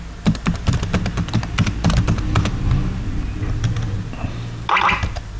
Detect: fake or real real